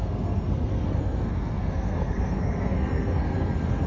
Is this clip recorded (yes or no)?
no